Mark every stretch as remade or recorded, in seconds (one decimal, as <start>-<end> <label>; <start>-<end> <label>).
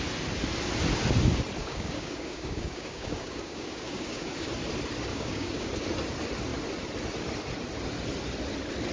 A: 0.0-1.6 recorded; 1.6-4.5 remade; 4.5-5.1 recorded; 5.1-5.7 remade; 5.7-8.9 recorded